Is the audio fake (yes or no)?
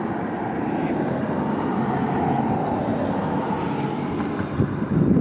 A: no